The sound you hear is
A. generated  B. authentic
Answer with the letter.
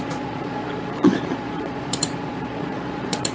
A